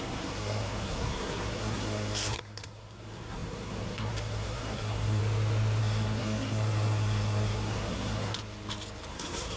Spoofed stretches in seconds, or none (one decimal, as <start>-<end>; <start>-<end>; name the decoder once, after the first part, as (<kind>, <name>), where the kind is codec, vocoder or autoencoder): 0.0-5.2 (codec, SNAC); 5.8-8.4; 9.1-9.6